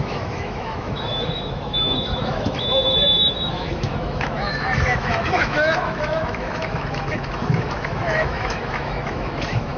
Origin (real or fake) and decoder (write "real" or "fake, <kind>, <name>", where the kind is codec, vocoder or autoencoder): fake, autoencoder, DAC-VAE